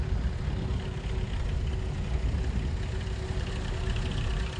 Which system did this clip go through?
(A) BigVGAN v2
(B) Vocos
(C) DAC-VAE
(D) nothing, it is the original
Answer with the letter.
D